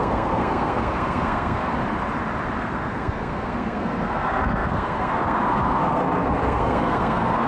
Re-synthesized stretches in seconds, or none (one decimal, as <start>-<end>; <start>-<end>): 0.0-1.7; 2.6-7.5